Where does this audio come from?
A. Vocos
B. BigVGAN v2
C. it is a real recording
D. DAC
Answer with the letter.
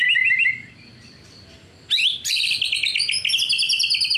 B